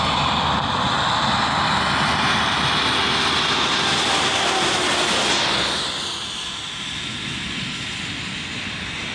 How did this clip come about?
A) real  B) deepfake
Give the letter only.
A